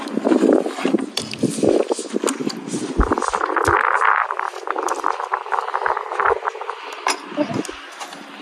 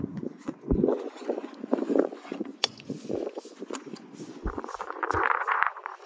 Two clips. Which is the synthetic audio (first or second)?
second